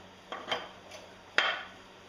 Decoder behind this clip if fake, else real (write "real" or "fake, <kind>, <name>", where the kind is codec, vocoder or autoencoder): real